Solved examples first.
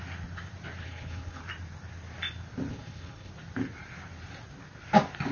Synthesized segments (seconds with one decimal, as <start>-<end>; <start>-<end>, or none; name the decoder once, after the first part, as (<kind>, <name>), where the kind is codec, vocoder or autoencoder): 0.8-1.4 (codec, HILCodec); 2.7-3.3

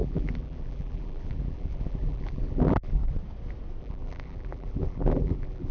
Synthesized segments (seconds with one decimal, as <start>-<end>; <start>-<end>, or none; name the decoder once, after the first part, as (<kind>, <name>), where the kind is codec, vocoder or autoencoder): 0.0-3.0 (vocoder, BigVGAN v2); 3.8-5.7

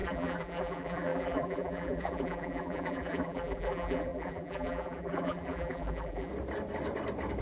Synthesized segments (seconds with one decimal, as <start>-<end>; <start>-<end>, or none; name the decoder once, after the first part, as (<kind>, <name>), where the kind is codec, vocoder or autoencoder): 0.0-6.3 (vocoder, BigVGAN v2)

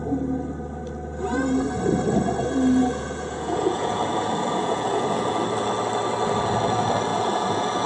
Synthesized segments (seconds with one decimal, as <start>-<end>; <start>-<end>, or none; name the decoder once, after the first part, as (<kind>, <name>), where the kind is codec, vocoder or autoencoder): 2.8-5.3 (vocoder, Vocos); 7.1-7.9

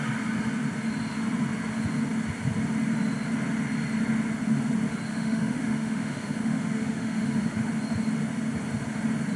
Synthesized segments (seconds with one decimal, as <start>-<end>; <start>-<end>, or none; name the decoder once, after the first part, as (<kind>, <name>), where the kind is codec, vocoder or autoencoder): 5.1-7.7 (autoencoder, DAC-VAE)

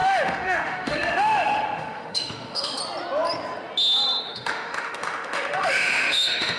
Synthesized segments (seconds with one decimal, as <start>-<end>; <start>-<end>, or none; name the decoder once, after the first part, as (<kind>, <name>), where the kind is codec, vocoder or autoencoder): 0.0-2.8 (autoencoder, DAC-VAE); 4.2-6.6

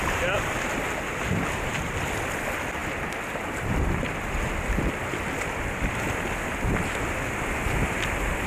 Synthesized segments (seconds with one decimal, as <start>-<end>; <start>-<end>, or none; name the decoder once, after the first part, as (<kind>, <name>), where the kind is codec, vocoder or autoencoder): none

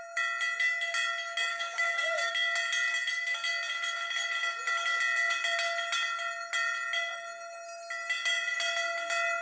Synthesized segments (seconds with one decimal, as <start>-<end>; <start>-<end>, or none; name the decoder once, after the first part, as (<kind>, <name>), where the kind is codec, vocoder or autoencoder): 1.5-2.3 (codec, DAC)